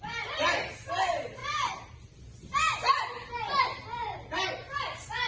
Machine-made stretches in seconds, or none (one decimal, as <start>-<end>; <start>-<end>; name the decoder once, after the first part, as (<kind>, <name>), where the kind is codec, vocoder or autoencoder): none